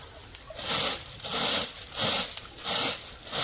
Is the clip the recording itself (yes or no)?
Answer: yes